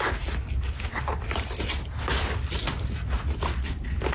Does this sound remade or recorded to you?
recorded